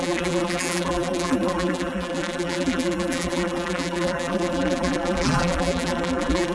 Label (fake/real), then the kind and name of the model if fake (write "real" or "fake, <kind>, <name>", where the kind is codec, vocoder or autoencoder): fake, vocoder, BigVGAN v2